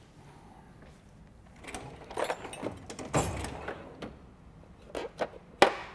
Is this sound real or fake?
real